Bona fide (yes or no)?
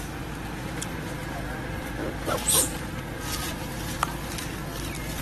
yes